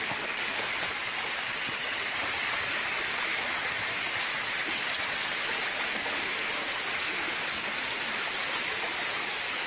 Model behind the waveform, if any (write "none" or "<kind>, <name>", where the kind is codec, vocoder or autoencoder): none